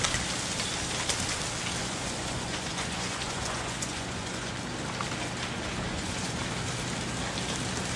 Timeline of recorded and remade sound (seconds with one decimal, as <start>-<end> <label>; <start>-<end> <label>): 0.0-1.8 recorded; 1.8-4.5 remade; 4.5-5.9 recorded; 5.9-6.4 remade; 6.4-8.0 recorded